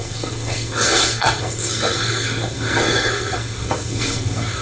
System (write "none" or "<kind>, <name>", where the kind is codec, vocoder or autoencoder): codec, SNAC